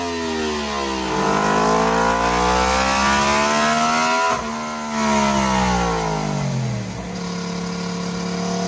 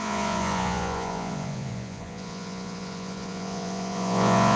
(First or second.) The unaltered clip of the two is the first